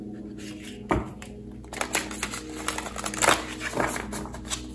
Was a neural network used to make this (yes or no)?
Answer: no